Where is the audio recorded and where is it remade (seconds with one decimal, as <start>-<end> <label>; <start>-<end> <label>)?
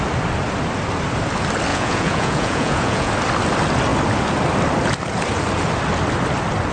0.0-1.7 recorded; 1.7-3.1 remade; 3.1-6.7 recorded